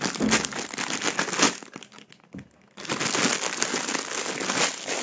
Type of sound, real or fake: real